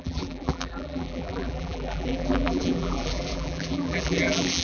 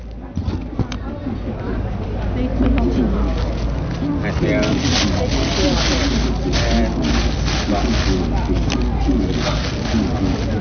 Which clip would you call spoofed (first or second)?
first